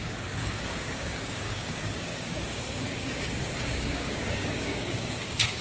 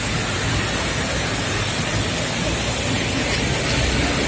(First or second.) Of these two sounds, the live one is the second